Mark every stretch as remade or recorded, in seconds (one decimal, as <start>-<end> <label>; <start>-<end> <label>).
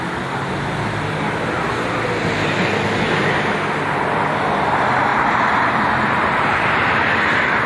0.0-5.1 recorded; 5.1-7.7 remade